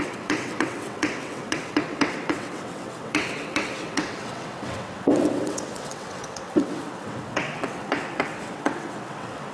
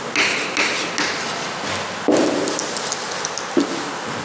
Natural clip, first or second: second